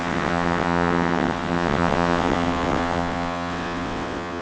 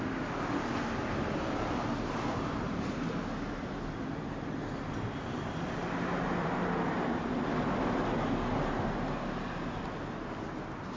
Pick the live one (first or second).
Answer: second